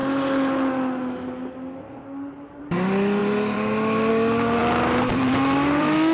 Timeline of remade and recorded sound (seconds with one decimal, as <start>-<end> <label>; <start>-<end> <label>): 0.0-2.6 recorded; 2.6-4.6 remade; 4.6-5.1 recorded; 5.1-6.1 remade